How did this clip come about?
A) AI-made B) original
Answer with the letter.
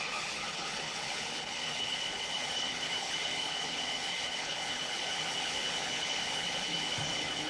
A